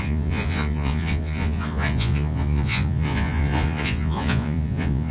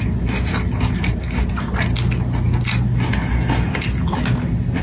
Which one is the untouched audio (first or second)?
second